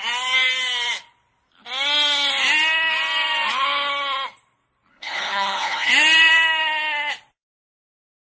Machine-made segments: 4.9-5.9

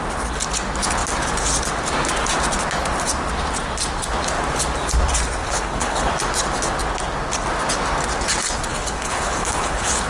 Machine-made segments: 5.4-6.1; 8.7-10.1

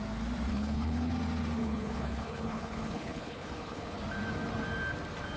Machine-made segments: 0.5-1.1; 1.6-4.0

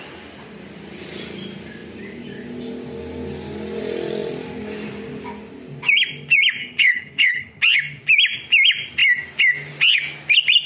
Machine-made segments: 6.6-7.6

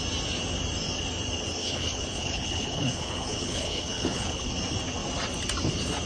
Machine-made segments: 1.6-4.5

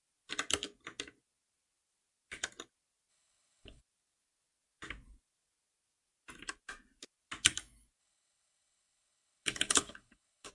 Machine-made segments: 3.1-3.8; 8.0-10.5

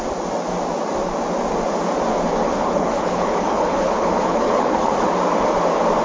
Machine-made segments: 2.4-5.1

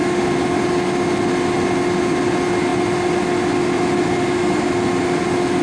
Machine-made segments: none